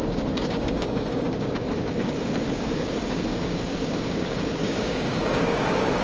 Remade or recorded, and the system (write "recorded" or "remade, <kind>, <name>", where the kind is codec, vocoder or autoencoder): remade, codec, DAC